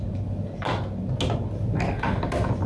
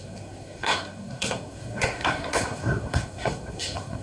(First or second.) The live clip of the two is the first